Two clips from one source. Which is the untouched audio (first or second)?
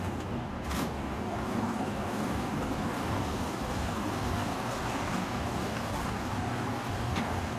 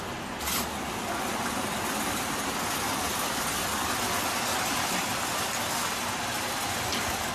second